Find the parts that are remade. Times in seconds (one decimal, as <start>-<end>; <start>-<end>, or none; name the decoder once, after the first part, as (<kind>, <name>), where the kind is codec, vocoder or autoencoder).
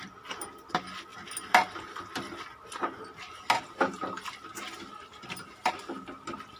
none